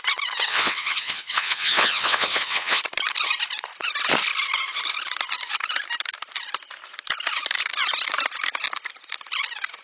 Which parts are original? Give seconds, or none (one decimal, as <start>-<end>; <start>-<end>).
0.0-0.5; 2.8-9.8